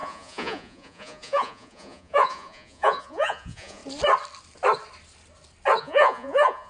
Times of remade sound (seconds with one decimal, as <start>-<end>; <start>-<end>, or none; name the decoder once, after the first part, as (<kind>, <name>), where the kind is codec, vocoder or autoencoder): 0.0-3.8 (vocoder, Vocos); 5.8-6.7